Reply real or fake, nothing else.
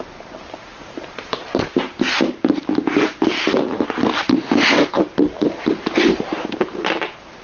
fake